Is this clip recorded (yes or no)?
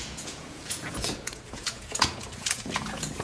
no